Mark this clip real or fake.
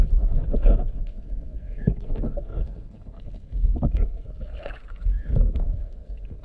fake